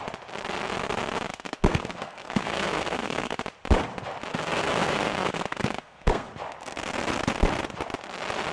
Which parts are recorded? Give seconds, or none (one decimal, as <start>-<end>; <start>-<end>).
0.0-1.3; 3.4-4.3; 6.3-8.5